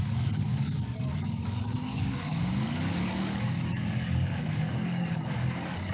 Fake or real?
fake